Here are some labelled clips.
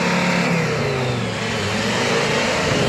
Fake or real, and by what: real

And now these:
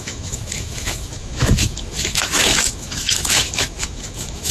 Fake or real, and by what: fake, autoencoder, DAC-VAE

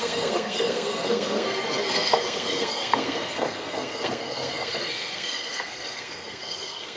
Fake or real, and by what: fake, codec, SNAC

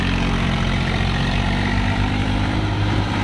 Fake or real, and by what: fake, vocoder, BigVGAN v2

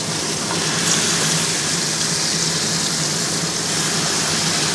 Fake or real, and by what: real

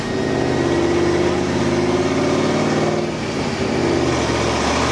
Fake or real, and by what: real